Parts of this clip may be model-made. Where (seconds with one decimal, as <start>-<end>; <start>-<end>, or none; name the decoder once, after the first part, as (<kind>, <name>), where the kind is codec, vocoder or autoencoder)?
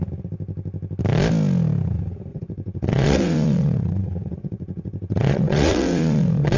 2.3-6.6 (vocoder, WaveNeXt)